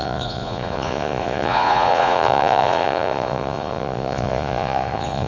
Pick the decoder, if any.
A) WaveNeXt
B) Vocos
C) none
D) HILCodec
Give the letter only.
B